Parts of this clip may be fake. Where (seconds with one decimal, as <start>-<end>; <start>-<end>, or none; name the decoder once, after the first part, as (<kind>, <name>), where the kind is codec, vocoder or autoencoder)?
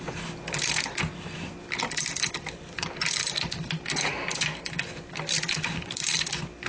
none